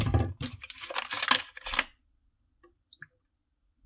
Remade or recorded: recorded